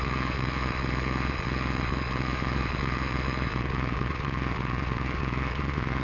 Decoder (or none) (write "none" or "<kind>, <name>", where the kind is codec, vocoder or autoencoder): vocoder, Vocos